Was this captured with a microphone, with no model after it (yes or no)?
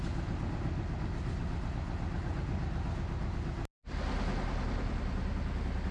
yes